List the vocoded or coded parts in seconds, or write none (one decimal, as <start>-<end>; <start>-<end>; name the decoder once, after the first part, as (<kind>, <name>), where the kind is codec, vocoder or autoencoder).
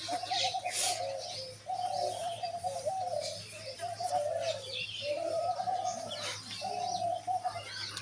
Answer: 2.2-5.7 (vocoder, BigVGAN v2)